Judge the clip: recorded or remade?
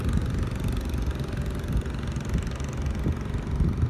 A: recorded